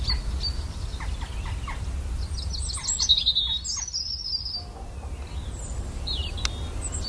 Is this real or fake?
real